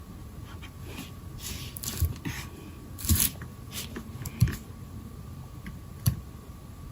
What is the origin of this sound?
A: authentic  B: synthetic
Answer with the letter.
B